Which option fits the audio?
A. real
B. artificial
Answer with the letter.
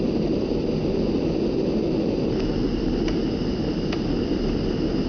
A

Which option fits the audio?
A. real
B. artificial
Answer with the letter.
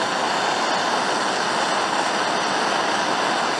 A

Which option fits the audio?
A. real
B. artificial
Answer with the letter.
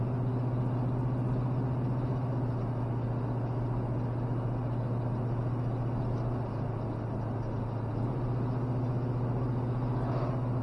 A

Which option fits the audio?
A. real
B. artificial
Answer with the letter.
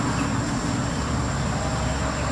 A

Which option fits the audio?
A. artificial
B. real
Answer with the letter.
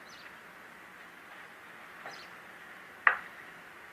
B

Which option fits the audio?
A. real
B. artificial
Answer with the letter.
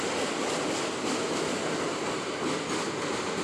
A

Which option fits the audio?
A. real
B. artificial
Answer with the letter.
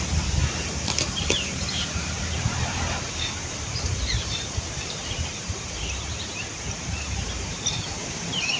B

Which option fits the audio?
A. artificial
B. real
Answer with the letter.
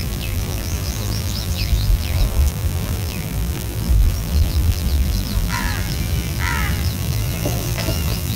A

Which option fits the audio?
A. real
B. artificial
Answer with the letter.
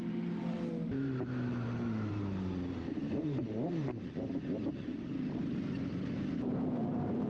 B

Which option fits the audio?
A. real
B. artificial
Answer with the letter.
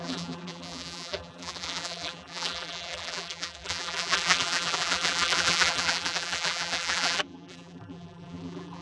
B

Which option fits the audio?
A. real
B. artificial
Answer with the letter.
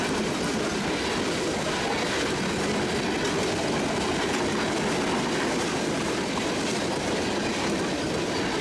A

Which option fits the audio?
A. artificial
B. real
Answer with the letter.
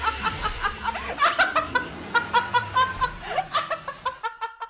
B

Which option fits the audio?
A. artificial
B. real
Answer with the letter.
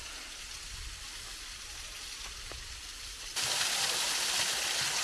A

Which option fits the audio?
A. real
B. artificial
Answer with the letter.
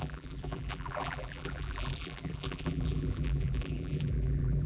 B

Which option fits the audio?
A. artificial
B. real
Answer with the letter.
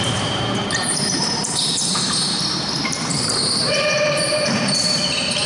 A